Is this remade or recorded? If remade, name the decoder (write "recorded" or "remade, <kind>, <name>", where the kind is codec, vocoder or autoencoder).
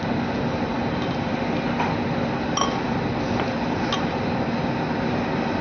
recorded